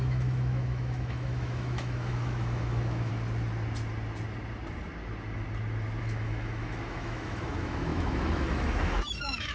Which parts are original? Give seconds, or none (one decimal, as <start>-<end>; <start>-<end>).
3.1-6.0